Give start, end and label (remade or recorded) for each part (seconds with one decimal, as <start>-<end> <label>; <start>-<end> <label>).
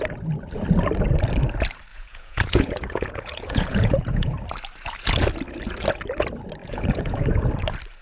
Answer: 0.0-1.9 recorded; 1.9-4.3 remade; 4.3-6.6 recorded; 6.6-7.4 remade; 7.4-8.0 recorded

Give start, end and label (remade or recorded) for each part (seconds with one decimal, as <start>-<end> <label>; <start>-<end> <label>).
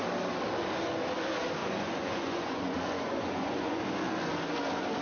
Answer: 0.0-1.6 recorded; 1.6-3.8 remade; 3.8-5.0 recorded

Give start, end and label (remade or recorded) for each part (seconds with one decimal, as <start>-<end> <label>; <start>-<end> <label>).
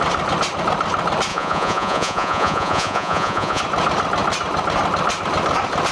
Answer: 0.0-1.3 recorded; 1.3-3.6 remade; 3.6-5.9 recorded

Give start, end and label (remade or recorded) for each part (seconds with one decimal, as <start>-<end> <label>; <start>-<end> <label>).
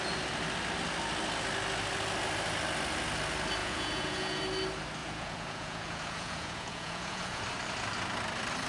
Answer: 0.0-3.6 recorded; 3.6-4.4 remade; 4.4-5.0 recorded; 5.0-7.4 remade; 7.4-8.7 recorded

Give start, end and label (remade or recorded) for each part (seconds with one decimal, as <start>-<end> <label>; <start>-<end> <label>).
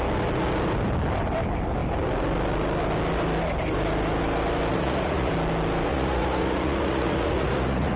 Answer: 0.0-4.7 recorded; 4.7-5.3 remade; 5.3-5.9 recorded; 5.9-8.0 remade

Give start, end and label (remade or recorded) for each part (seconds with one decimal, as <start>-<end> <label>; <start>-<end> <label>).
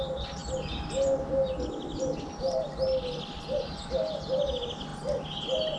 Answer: 0.0-5.8 recorded